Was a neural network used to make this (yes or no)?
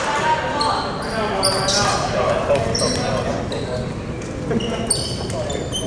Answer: no